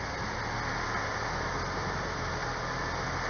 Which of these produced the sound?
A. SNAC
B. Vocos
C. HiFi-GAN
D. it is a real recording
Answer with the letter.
D